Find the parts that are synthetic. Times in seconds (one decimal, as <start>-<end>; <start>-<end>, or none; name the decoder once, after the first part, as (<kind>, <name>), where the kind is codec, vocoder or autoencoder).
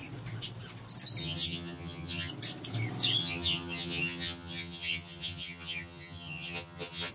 1.2-2.3 (vocoder, HiFi-GAN); 3.2-7.1